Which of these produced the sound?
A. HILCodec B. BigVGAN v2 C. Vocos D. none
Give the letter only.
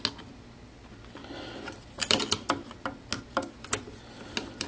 D